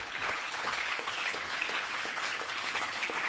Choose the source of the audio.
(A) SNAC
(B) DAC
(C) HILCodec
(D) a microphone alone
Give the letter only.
C